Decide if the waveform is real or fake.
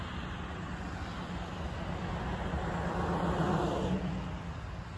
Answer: real